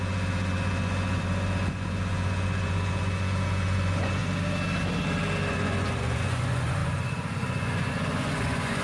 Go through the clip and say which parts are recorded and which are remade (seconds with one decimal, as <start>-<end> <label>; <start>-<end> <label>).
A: 0.0-4.2 remade; 4.2-5.5 recorded; 5.5-8.8 remade